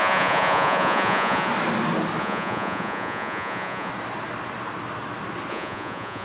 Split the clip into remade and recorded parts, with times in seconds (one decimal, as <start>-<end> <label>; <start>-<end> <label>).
0.0-1.5 remade; 1.5-2.2 recorded; 2.2-3.9 remade; 3.9-5.5 recorded; 5.5-6.2 remade